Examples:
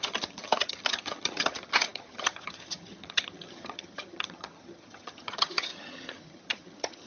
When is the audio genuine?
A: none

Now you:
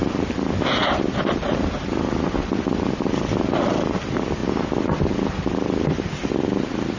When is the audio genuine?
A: 0.0-7.0

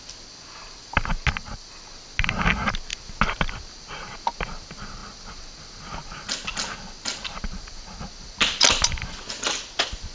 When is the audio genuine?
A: 0.0-10.1

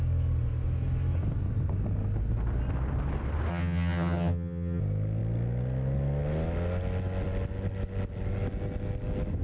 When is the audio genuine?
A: 0.0-3.5; 4.8-9.4

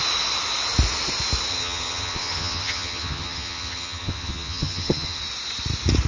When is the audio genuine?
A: 0.0-1.5; 5.2-6.1